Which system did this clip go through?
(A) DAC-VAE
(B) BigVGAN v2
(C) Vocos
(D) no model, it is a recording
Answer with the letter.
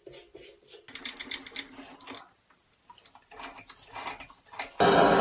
D